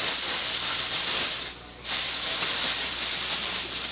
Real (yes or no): yes